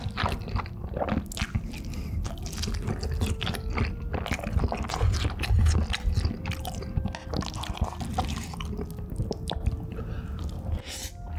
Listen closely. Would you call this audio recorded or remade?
recorded